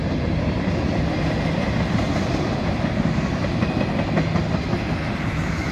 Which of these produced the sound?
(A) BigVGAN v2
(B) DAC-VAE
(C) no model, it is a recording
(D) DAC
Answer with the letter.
C